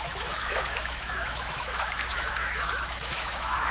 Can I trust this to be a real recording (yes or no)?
no